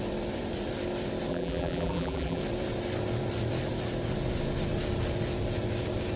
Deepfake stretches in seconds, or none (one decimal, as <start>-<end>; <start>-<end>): 1.3-2.4